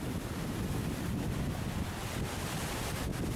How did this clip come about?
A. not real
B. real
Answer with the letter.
B